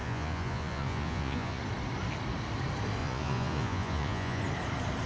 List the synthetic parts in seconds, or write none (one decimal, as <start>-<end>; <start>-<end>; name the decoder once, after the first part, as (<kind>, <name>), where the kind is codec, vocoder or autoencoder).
0.0-1.6 (vocoder, Vocos); 3.0-4.4